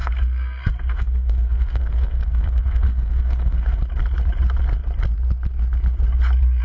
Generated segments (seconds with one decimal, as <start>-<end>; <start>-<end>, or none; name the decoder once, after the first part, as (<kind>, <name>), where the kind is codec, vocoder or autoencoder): 0.0-3.8 (codec, SNAC)